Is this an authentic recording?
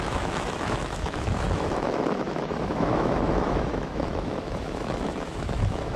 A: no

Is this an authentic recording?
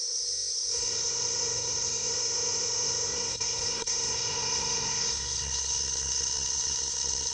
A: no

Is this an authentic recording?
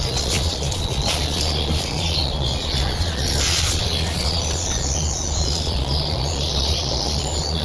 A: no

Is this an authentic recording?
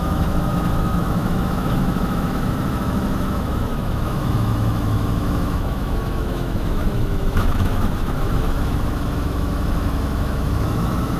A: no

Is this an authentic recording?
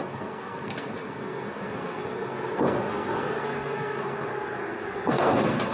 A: no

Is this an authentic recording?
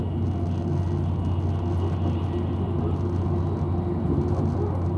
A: yes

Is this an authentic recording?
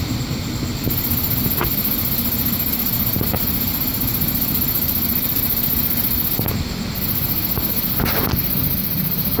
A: yes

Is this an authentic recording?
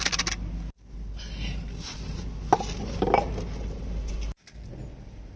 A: yes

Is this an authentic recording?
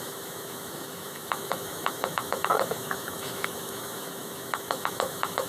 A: no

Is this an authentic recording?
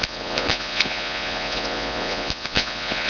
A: no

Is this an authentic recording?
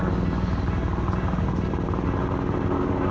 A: yes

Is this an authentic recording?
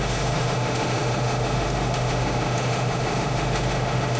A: no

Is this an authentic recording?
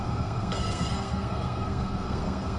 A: no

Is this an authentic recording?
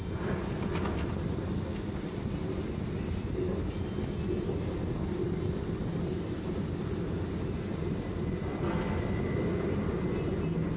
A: yes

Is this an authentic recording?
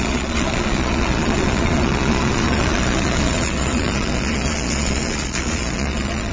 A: no